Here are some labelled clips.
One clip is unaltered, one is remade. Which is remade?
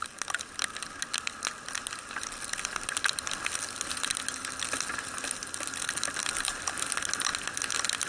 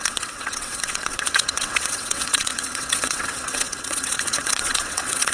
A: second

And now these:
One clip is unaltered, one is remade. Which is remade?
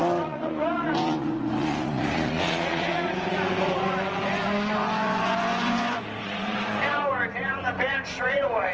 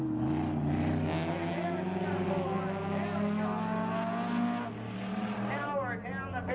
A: first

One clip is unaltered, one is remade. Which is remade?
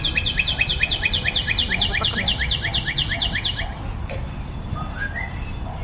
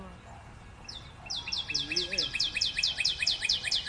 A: first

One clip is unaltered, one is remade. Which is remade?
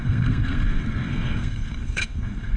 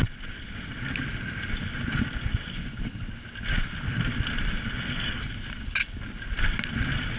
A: first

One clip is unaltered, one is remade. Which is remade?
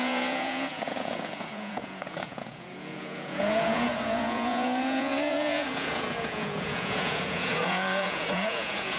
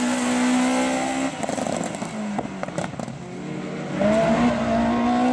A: first